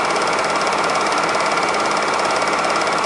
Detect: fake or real real